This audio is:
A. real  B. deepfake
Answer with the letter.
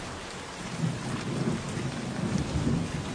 A